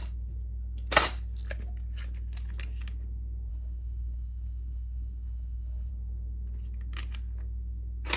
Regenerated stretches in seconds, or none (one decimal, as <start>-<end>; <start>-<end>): 3.5-5.9